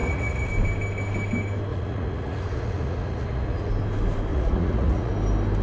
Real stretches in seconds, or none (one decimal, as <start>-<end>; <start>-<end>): 0.5-1.7; 3.7-4.3; 5.1-5.6